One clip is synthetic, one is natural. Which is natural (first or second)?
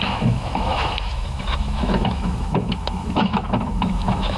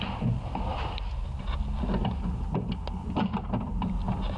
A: second